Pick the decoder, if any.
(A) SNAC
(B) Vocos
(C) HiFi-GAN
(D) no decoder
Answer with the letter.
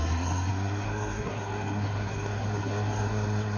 A